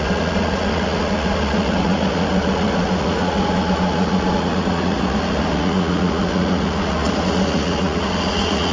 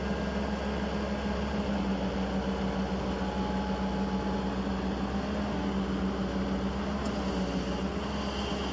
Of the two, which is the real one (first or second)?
second